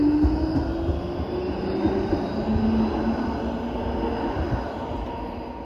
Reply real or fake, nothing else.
real